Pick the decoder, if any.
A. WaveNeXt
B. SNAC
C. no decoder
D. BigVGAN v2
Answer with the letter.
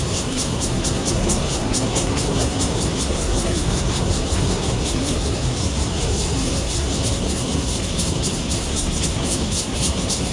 B